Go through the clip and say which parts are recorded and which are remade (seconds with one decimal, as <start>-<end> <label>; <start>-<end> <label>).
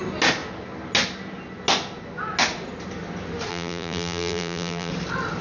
0.0-3.5 recorded; 3.5-4.9 remade; 4.9-5.4 recorded